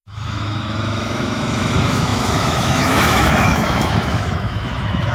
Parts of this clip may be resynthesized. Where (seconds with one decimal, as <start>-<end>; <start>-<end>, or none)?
0.0-5.1

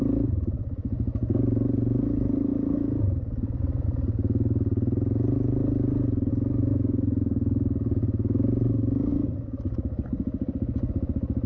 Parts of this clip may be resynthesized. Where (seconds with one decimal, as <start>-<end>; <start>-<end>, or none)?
6.7-8.0

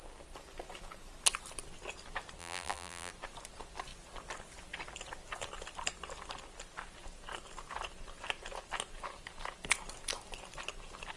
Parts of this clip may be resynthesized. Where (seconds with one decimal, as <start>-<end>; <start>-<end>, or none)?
2.4-3.1

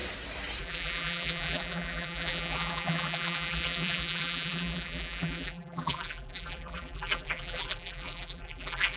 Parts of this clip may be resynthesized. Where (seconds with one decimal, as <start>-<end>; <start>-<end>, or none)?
0.6-9.0

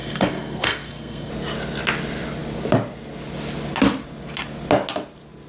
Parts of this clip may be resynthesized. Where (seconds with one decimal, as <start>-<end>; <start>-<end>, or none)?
0.0-1.3

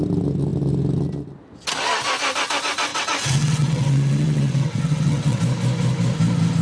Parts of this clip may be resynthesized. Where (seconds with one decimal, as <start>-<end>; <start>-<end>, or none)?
2.9-5.4

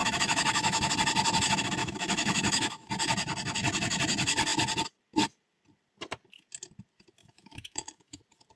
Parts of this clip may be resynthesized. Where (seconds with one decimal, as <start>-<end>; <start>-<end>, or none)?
0.0-0.9; 1.8-2.9; 7.2-8.2